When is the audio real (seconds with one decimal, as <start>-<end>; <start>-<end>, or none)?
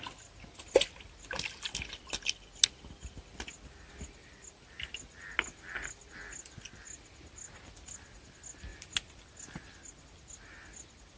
0.0-11.2